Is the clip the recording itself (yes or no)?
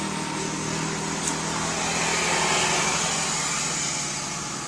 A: yes